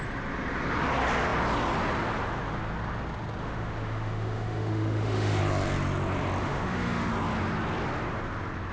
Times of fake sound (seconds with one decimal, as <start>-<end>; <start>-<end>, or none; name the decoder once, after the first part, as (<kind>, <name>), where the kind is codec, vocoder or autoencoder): 3.4-5.4 (autoencoder, DAC-VAE); 6.4-7.1